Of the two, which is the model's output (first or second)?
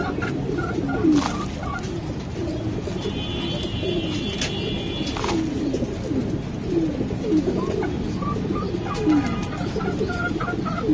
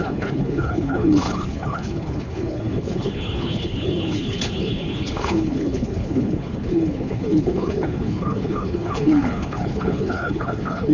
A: second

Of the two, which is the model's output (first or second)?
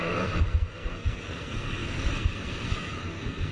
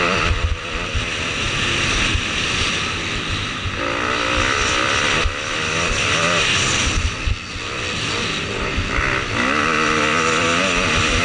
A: first